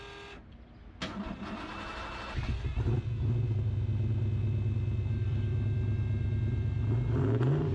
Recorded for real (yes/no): yes